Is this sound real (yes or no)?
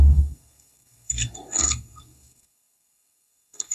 no